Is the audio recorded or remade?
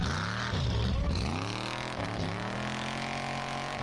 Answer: recorded